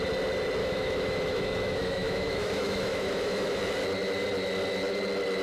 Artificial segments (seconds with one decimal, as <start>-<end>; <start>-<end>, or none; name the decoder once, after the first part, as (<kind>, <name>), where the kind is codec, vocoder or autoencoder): 0.6-3.6 (autoencoder, DAC-VAE)